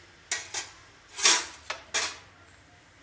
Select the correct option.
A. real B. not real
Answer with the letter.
A